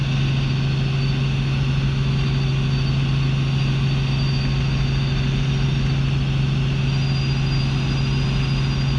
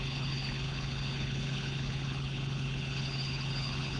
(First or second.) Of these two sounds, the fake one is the second